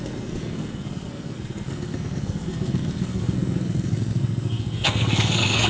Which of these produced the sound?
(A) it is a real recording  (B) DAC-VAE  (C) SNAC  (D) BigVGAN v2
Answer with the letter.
C